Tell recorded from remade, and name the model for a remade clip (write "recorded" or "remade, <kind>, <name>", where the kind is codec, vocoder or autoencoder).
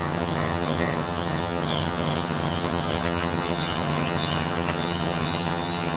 remade, vocoder, HiFi-GAN